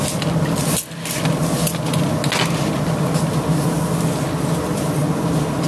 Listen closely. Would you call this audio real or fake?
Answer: real